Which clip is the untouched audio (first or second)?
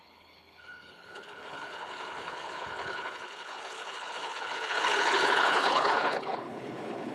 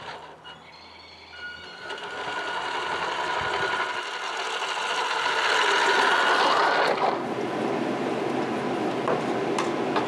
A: second